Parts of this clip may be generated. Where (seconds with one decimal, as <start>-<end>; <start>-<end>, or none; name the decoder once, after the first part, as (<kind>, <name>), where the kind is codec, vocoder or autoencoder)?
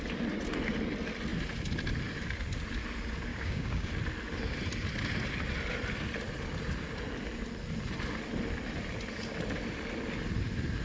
3.3-3.9 (codec, DAC)